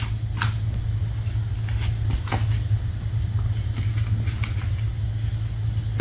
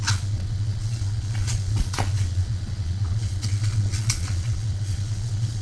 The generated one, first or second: second